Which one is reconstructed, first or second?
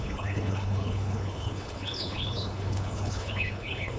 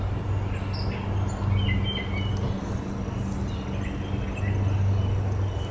first